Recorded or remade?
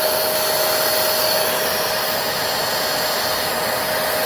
recorded